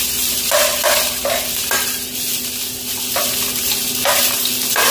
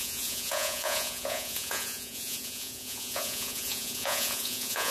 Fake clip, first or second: second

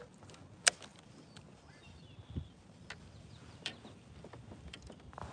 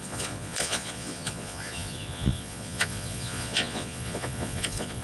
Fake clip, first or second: second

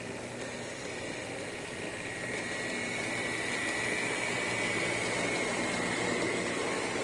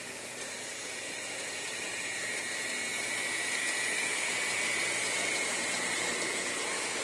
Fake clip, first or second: second